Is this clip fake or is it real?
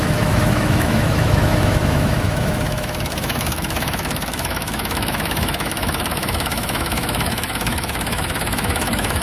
fake